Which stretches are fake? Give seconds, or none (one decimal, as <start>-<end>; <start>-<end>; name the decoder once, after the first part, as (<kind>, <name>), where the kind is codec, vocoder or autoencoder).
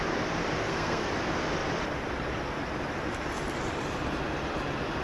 0.6-1.1 (codec, SNAC)